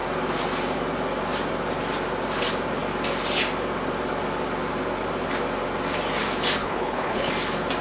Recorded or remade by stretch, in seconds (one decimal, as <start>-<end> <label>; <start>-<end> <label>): 0.0-6.6 recorded; 6.6-7.3 remade; 7.3-7.8 recorded